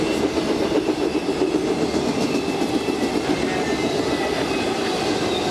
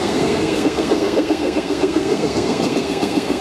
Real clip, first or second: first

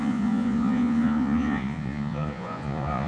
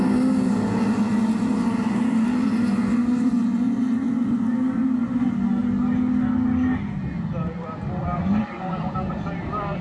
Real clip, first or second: second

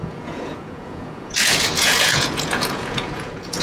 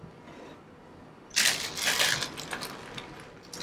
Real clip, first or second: second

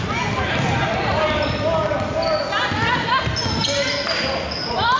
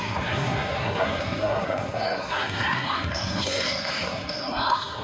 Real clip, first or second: first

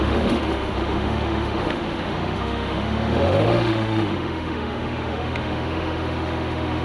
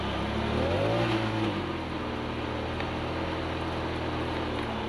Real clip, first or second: second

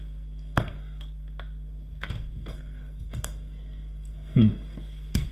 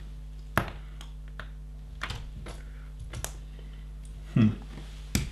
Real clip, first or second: second